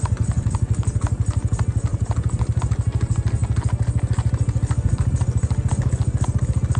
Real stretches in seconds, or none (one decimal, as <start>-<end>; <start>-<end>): 0.0-6.8